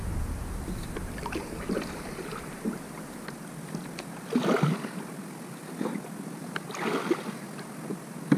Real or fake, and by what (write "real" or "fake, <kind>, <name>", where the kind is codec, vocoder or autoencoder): real